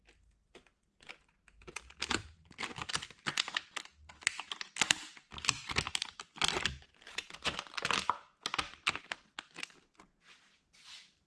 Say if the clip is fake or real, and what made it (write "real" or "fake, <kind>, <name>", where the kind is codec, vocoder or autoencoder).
real